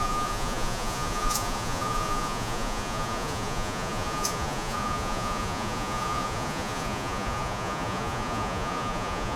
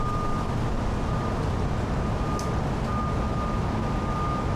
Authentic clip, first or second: second